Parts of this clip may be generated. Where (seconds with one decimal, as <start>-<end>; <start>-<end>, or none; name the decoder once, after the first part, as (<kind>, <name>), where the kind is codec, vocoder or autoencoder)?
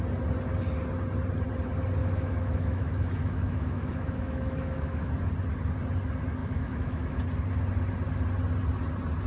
2.0-5.1 (autoencoder, DAC-VAE); 6.4-7.2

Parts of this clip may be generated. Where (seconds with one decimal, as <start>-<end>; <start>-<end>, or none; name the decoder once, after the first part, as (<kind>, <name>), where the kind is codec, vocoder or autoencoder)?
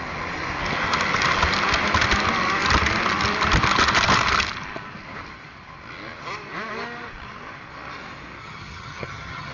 8.4-9.5 (vocoder, HiFi-GAN)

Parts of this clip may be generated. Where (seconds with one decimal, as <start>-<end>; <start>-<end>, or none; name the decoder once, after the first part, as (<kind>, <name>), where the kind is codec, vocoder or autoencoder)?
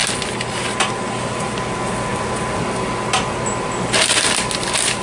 none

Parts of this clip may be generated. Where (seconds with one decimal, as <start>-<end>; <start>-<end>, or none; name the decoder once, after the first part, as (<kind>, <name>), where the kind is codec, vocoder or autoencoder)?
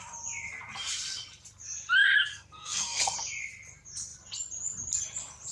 2.3-3.0 (codec, SNAC)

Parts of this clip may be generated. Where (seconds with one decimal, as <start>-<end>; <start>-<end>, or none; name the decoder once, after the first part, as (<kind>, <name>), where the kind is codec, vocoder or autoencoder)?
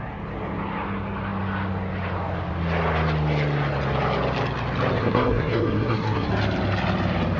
5.0-6.3 (codec, SNAC)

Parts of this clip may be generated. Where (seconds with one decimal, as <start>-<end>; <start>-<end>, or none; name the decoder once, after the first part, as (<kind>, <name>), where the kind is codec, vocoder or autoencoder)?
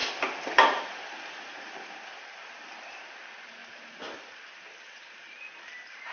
0.0-3.0 (vocoder, BigVGAN v2); 3.6-5.4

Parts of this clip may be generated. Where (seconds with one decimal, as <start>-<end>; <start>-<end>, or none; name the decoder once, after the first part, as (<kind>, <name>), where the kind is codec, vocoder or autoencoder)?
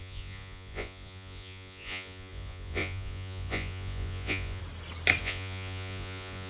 0.0-4.6 (vocoder, Vocos); 5.2-6.5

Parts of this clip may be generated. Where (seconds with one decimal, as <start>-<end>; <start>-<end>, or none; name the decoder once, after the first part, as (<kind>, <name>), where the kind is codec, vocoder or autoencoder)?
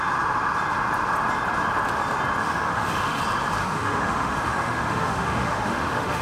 2.4-3.2 (autoencoder, DAC-VAE); 3.6-6.2